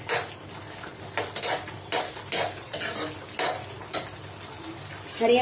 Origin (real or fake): real